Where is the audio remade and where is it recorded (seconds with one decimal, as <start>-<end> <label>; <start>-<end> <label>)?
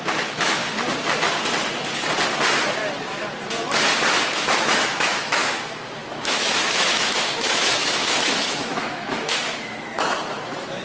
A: 0.0-0.6 remade; 0.6-4.3 recorded; 4.3-10.8 remade